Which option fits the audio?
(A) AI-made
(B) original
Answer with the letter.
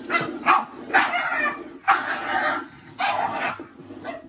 B